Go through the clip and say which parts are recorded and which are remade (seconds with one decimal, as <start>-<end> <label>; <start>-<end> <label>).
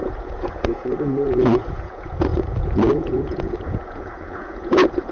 0.0-5.1 remade